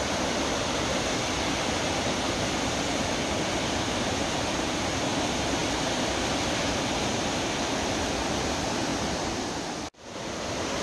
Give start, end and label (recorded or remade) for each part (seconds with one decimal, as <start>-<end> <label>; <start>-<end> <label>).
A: 0.0-8.9 recorded; 8.9-9.5 remade; 9.5-10.8 recorded

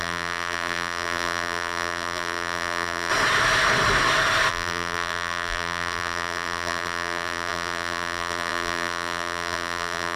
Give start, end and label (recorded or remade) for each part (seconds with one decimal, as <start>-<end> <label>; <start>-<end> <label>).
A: 0.0-3.1 remade; 3.1-4.5 recorded; 4.5-10.2 remade